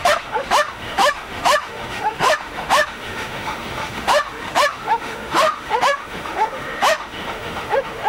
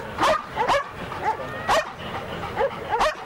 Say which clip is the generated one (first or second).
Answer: first